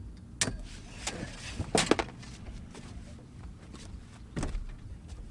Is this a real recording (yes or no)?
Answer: yes